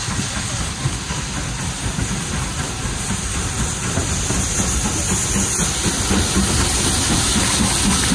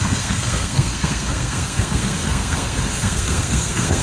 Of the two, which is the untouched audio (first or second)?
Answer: first